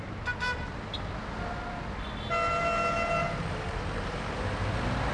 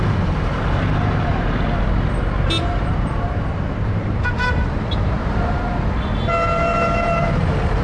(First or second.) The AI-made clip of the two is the second